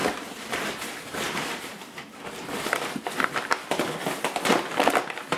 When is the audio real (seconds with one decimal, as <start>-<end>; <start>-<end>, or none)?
3.0-5.4